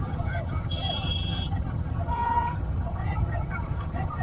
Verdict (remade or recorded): remade